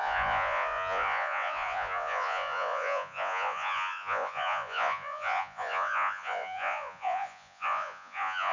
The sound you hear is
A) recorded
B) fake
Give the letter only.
B